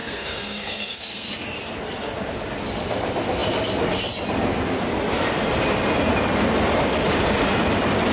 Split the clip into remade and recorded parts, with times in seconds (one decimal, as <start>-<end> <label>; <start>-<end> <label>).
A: 0.0-1.3 remade; 1.3-8.1 recorded